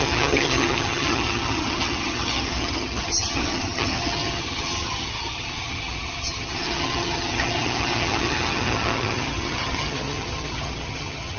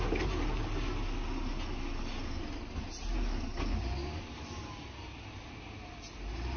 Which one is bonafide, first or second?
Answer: second